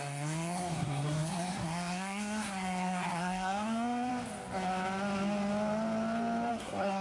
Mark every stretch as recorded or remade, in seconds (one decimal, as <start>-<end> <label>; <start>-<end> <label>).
0.0-4.1 remade; 4.1-6.5 recorded; 6.5-7.0 remade